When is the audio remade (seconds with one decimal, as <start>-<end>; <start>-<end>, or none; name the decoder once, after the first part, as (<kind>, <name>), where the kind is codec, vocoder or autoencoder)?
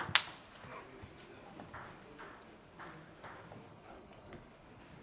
3.7-4.5 (codec, HILCodec)